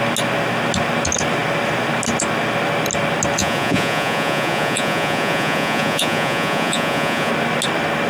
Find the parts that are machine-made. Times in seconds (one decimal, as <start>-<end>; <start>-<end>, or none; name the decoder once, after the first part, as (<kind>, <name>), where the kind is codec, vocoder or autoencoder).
3.4-7.3 (vocoder, Vocos)